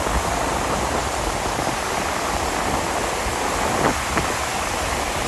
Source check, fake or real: real